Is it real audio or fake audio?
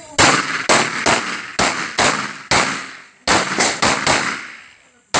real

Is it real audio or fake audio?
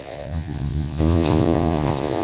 fake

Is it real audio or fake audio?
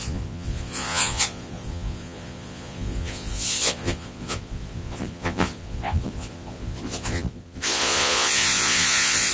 fake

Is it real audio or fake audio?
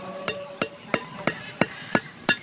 fake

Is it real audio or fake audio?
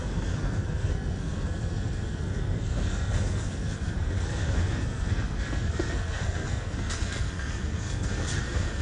fake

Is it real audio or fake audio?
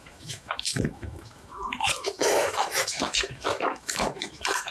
fake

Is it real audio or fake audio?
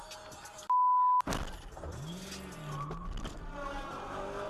real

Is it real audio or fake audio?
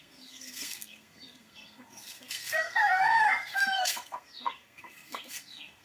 fake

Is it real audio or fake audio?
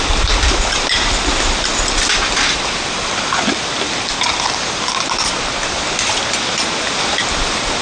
real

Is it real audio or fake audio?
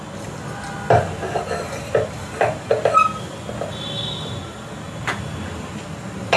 real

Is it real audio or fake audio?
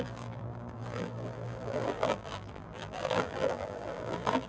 fake